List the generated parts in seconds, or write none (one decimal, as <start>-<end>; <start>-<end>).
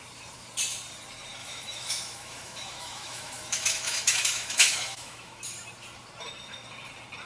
1.4-5.4